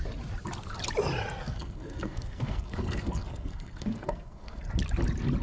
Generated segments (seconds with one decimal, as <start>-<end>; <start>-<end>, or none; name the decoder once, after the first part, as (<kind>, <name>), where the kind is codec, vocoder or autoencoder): 1.4-4.6 (codec, SNAC)